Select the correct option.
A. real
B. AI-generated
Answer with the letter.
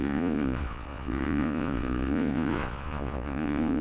B